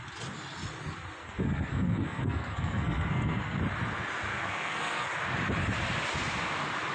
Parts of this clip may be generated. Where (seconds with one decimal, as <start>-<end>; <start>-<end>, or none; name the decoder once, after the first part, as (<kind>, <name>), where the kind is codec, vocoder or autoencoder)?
1.2-3.6 (codec, SNAC); 4.3-5.1